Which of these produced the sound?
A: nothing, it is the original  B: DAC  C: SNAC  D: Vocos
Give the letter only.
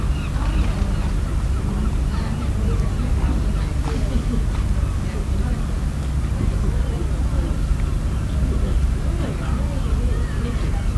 A